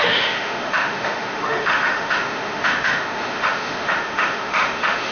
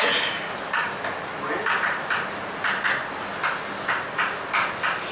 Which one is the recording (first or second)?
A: second